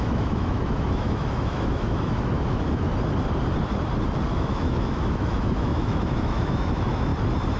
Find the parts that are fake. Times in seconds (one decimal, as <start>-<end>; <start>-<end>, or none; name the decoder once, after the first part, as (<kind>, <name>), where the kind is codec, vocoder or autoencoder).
0.0-2.9 (autoencoder, DAC-VAE); 4.3-7.1